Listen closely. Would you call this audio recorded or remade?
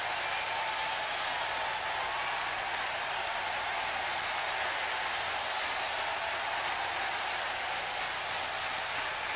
recorded